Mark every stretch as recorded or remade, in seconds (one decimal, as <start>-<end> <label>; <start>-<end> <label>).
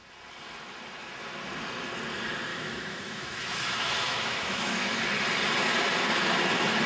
0.0-2.5 recorded; 2.5-5.0 remade; 5.0-6.9 recorded